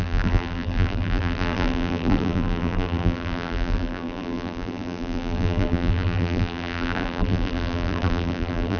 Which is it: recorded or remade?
remade